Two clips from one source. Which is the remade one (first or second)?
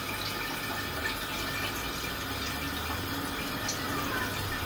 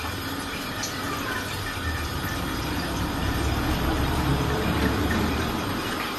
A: second